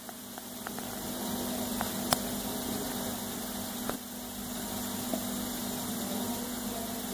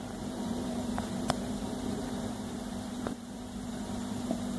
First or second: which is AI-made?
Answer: second